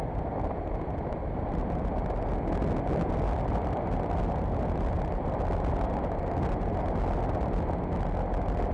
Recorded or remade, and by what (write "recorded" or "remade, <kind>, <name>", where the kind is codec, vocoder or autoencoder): recorded